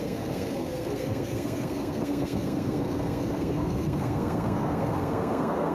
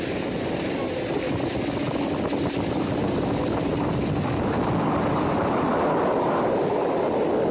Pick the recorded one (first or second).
second